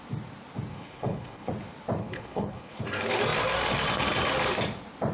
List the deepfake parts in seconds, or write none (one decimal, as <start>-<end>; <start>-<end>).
0.7-1.5; 2.0-2.8